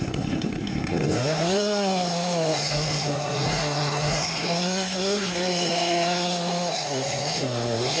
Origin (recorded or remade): remade